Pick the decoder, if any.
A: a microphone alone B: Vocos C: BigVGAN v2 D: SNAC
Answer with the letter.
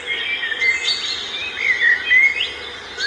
A